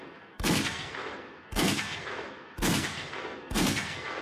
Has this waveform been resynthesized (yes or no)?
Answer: yes